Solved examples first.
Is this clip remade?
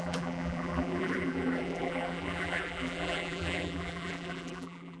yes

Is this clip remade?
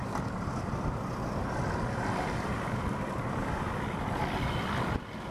yes